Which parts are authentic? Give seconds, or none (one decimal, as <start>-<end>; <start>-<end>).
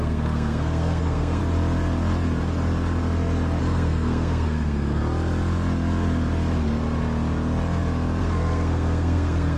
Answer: 1.4-3.6; 5.0-8.2